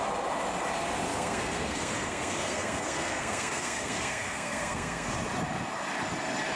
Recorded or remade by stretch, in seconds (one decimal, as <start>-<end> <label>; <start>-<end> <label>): 0.0-1.1 recorded; 1.1-5.1 remade; 5.1-6.6 recorded